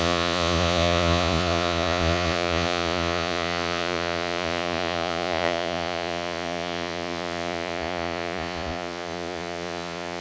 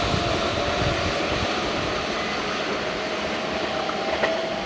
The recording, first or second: second